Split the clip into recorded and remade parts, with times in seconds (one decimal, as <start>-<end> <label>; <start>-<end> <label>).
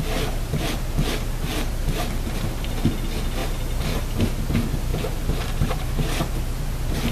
0.0-7.1 recorded